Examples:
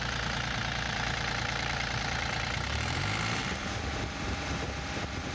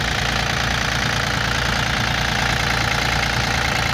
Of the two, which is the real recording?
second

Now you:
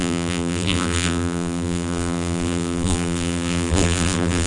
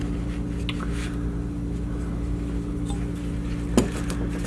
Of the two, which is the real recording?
second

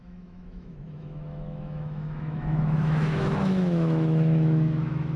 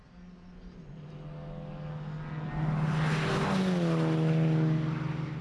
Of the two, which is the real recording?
second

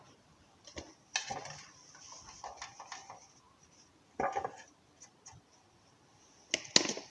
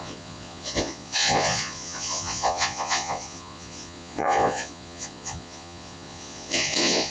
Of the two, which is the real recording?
first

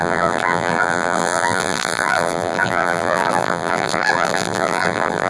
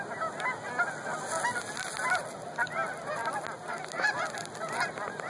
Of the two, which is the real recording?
second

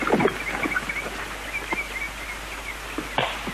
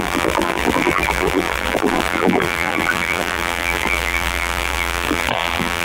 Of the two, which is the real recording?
first